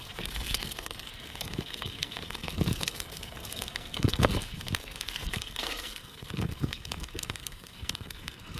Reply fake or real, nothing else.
fake